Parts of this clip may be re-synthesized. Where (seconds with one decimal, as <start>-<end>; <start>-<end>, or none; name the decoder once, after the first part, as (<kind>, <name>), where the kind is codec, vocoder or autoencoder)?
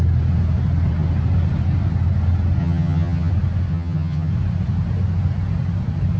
2.6-3.3 (vocoder, HiFi-GAN); 3.7-4.3